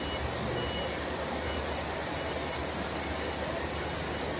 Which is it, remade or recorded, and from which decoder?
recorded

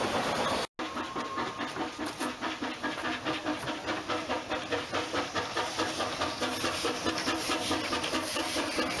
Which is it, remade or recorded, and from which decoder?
recorded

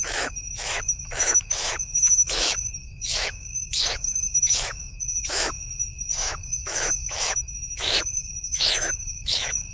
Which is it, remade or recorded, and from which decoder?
remade, autoencoder, DAC-VAE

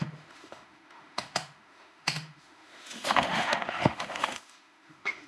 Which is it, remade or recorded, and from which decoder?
remade, autoencoder, DAC-VAE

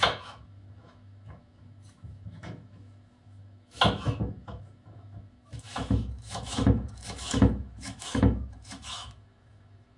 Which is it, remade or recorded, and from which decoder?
remade, autoencoder, DAC-VAE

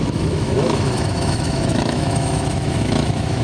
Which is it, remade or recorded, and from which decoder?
remade, autoencoder, DAC-VAE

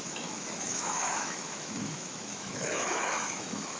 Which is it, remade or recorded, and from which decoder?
remade, autoencoder, DAC-VAE